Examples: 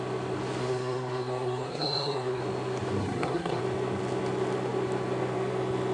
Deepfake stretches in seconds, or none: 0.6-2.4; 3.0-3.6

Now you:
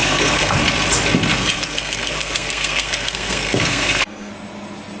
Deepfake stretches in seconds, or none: 0.0-0.6; 1.3-4.3